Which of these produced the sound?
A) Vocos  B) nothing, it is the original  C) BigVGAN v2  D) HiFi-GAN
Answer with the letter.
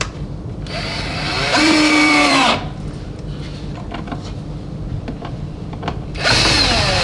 C